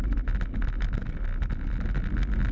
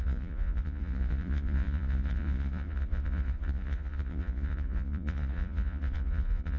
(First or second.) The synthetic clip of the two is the second